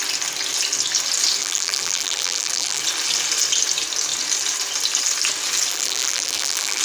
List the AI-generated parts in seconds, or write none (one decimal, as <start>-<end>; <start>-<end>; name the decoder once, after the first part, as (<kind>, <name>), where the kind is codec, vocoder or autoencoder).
1.4-2.8 (vocoder, BigVGAN v2); 5.7-6.8